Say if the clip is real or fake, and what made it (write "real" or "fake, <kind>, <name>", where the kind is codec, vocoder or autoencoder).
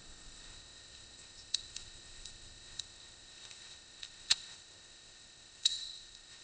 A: fake, codec, ZipCodec